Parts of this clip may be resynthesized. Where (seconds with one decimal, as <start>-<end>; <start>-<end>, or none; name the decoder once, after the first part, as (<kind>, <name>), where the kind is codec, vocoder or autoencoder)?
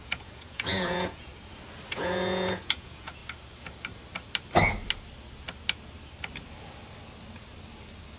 0.0-1.3 (vocoder, Vocos); 1.9-3.2